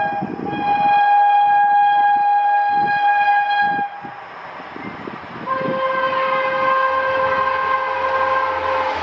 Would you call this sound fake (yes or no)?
no